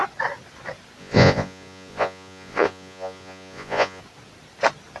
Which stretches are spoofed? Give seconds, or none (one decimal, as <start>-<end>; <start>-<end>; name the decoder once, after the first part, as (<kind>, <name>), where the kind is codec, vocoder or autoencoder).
1.0-4.0 (vocoder, Vocos)